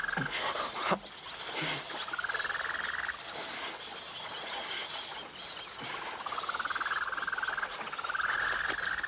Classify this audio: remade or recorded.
recorded